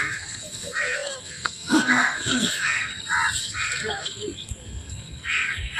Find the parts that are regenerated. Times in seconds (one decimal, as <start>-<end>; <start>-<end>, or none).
0.0-2.9; 3.4-5.8